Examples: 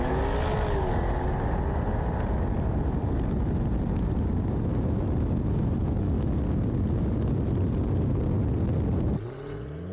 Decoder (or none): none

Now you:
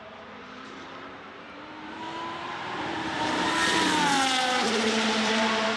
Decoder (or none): vocoder, BigVGAN v2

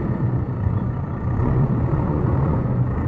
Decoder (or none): vocoder, Vocos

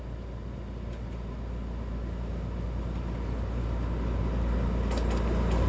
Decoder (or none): none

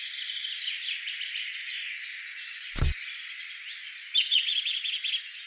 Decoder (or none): none